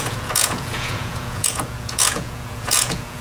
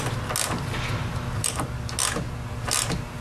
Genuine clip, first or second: second